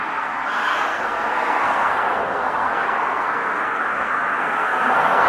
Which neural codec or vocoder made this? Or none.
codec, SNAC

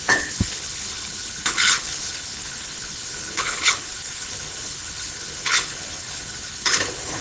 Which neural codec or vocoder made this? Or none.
codec, HILCodec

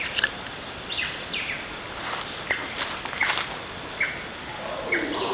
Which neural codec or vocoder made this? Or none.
none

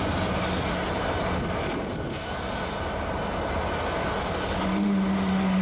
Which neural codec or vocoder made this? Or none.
none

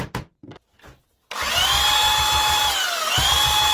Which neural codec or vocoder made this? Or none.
none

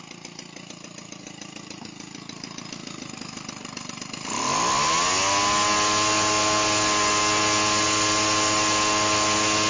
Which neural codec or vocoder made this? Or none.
none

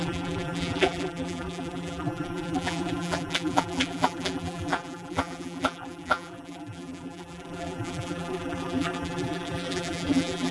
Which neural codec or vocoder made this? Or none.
vocoder, BigVGAN v2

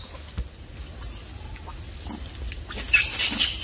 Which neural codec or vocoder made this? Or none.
none